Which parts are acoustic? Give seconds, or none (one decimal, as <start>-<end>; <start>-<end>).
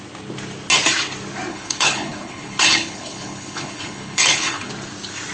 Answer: 0.0-1.5; 4.7-5.3